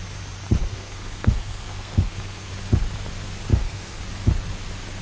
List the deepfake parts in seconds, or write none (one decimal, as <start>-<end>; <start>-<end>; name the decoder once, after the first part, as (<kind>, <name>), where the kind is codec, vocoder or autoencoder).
0.6-2.5 (codec, SNAC); 3.5-4.0